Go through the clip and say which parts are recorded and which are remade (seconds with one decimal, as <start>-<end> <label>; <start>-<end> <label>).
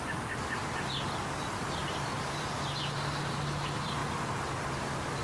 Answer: 0.0-5.2 recorded